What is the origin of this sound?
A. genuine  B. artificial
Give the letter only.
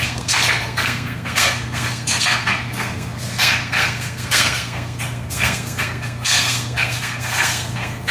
B